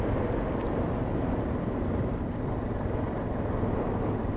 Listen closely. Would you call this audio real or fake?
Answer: real